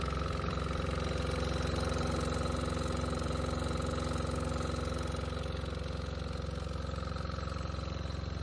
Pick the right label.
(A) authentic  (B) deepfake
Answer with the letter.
A